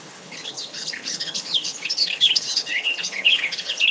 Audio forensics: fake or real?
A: fake